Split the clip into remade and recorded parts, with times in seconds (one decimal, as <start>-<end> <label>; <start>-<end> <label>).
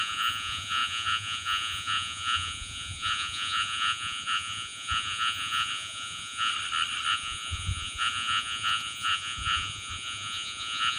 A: 0.0-6.5 remade; 6.5-7.1 recorded; 7.1-11.0 remade